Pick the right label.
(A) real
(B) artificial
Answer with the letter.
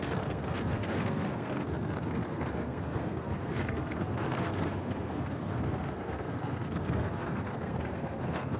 B